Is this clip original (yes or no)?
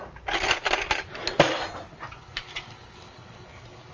yes